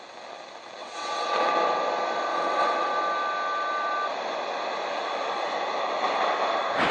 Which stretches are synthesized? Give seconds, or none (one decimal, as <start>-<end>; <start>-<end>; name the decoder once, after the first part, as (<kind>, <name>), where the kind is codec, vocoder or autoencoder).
0.8-1.5 (vocoder, WaveNeXt); 2.3-2.9